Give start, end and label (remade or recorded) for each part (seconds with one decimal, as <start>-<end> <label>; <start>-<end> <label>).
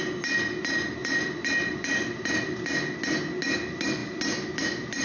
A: 0.0-1.0 recorded; 1.0-2.8 remade; 2.8-5.0 recorded